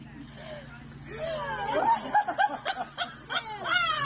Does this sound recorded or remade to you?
recorded